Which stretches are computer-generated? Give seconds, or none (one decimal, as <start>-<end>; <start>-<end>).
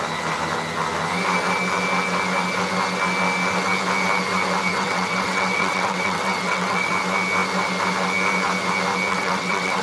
4.7-6.9; 9.1-9.8